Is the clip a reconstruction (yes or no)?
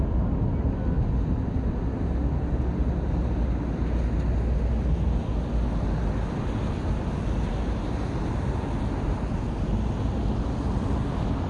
no